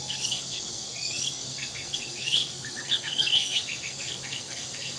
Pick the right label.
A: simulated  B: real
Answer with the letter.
A